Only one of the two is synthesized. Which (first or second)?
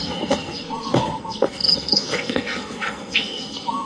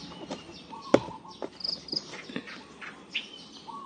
first